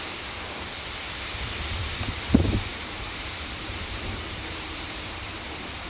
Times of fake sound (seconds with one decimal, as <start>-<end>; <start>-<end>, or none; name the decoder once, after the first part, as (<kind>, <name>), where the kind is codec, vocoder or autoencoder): 2.7-5.2 (vocoder, BigVGAN v2)